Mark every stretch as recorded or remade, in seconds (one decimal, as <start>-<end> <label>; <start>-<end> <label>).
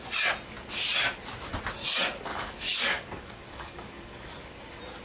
0.0-2.3 recorded; 2.3-4.5 remade; 4.5-5.0 recorded